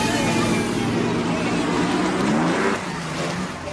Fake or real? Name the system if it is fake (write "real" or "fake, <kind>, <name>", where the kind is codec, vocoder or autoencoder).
real